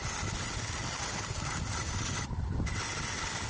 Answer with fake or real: real